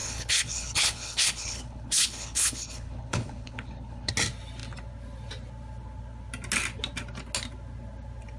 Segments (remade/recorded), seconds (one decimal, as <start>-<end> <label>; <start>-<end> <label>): 0.0-4.1 remade; 4.1-8.4 recorded